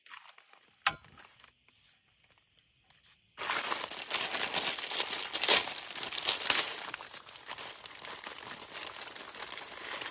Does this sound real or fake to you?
real